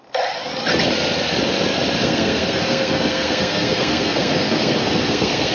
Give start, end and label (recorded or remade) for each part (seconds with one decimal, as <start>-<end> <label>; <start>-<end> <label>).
0.0-2.0 recorded; 2.0-5.5 remade

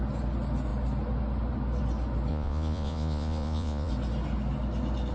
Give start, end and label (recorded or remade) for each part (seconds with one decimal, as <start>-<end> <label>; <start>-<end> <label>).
0.0-2.3 recorded; 2.3-3.9 remade; 3.9-5.1 recorded

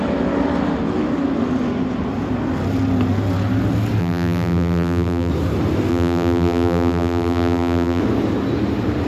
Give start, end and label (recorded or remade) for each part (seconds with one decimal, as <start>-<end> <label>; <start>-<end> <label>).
0.0-4.0 recorded; 4.0-5.3 remade; 5.3-5.9 recorded; 5.9-8.0 remade; 8.0-9.1 recorded

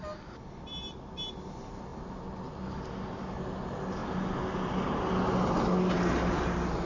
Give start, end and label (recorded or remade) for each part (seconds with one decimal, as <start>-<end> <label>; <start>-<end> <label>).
0.0-6.9 recorded

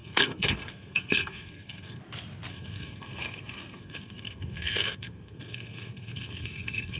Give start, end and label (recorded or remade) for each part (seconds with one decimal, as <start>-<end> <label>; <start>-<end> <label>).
0.0-2.0 remade; 2.0-2.5 recorded; 2.5-7.0 remade